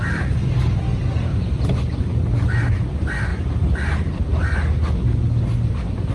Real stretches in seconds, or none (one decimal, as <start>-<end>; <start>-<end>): 0.0-1.3; 2.0-6.1